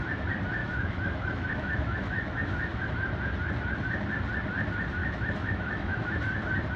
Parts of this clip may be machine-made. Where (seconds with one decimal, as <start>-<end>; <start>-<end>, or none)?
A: 0.6-2.8; 5.0-6.1